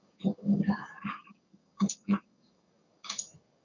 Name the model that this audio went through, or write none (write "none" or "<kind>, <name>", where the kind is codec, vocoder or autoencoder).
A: codec, DAC